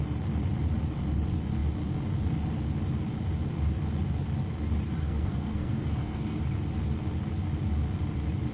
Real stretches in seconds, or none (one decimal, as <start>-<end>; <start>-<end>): 0.0-5.0; 6.4-8.5